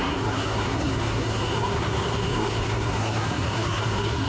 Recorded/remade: remade